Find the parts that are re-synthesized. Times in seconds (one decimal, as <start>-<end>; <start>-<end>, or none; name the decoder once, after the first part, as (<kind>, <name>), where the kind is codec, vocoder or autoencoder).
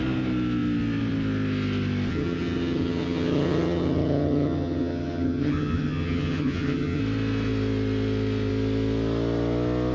2.1-7.0 (vocoder, HiFi-GAN)